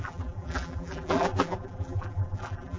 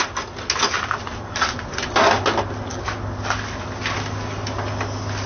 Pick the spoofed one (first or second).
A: first